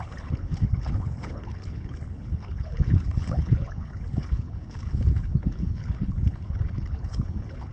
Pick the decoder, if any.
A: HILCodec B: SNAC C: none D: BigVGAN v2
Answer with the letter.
A